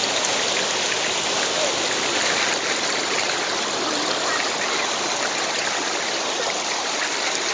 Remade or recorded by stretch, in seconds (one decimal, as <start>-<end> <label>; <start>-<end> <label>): 0.0-7.5 recorded